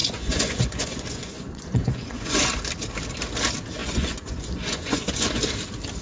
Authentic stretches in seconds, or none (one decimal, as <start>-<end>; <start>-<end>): 2.5-3.8; 5.4-6.0